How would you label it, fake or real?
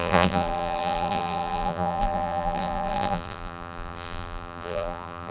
fake